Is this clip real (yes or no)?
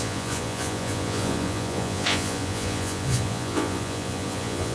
no